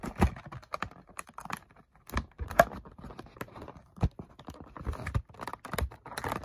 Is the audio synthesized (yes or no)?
no